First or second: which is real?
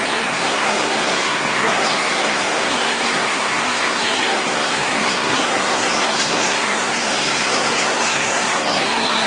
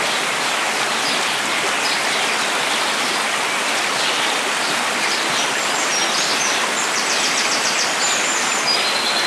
second